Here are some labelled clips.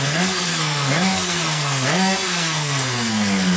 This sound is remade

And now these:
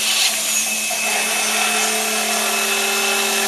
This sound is recorded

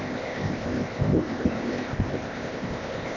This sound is remade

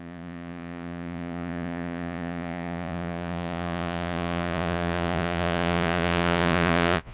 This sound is remade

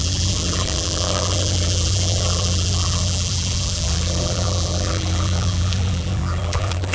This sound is remade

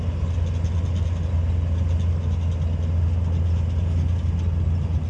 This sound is recorded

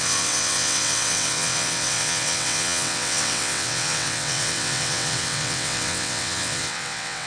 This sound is remade